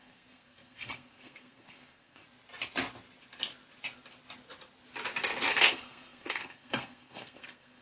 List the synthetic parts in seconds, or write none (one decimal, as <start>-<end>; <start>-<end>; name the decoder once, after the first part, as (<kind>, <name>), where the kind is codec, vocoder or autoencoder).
0.0-2.2 (codec, SNAC); 5.5-7.8